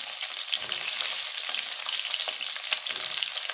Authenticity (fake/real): real